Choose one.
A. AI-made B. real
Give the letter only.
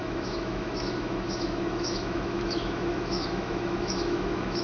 A